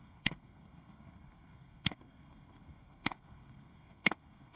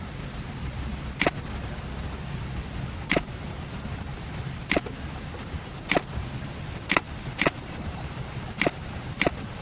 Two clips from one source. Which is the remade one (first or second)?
first